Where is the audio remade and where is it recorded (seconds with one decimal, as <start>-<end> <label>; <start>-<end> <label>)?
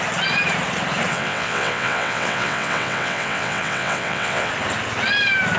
0.0-1.1 recorded; 1.1-4.5 remade; 4.5-5.6 recorded